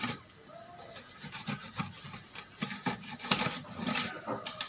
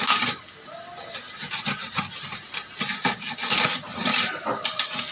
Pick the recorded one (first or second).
second